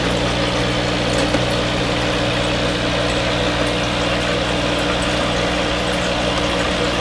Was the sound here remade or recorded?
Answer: recorded